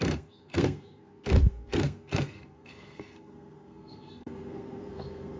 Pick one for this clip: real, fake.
fake